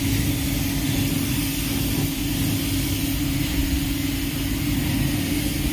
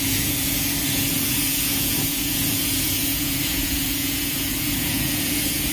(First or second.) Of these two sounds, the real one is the first